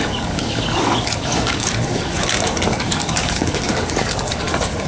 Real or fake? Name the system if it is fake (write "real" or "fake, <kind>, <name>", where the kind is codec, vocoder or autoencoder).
fake, codec, DAC